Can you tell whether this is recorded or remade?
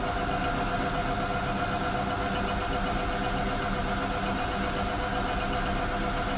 recorded